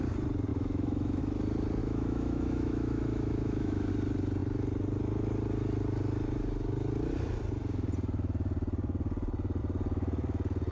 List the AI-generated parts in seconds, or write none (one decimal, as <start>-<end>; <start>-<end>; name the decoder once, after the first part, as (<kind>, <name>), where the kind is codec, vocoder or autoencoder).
0.5-1.2 (autoencoder, DAC-VAE); 1.8-3.9